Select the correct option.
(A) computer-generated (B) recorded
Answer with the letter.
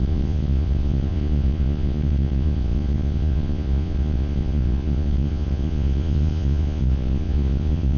A